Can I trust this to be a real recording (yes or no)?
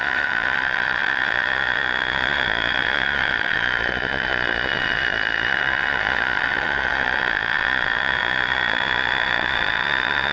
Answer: no